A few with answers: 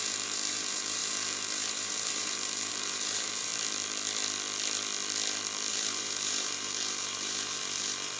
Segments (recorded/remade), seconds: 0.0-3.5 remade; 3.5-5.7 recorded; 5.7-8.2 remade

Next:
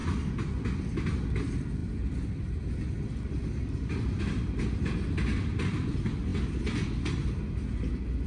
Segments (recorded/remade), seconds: 0.0-8.3 recorded

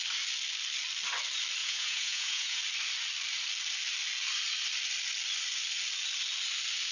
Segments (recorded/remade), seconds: 0.0-1.6 recorded; 1.6-2.6 remade; 2.6-6.9 recorded

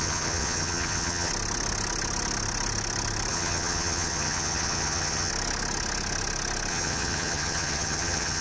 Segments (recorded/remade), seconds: 0.0-1.3 remade; 1.3-3.3 recorded; 3.3-5.3 remade; 5.3-6.7 recorded; 6.7-8.4 remade